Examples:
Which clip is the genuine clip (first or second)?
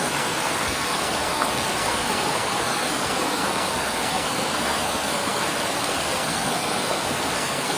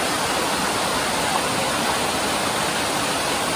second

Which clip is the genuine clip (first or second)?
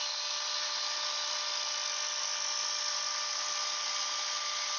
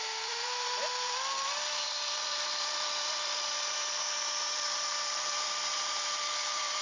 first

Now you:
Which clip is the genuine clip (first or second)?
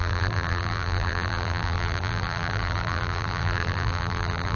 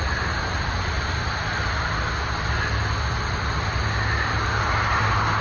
second